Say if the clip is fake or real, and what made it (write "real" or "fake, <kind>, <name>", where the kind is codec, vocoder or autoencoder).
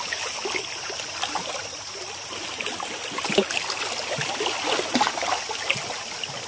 real